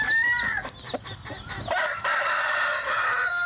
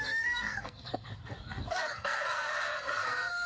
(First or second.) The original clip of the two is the first